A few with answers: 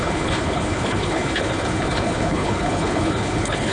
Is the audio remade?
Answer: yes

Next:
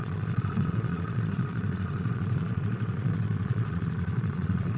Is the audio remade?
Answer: yes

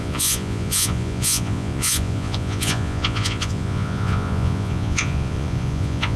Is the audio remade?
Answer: yes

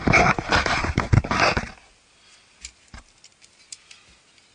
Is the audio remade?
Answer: no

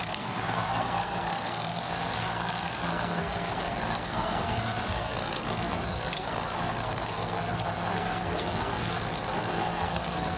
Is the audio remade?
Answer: yes